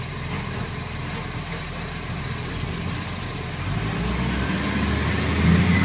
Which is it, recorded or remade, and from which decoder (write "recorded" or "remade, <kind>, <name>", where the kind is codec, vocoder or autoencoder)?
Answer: recorded